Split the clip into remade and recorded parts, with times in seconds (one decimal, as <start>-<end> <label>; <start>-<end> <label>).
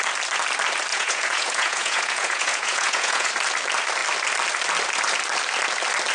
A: 0.0-0.9 recorded; 0.9-3.3 remade; 3.3-6.1 recorded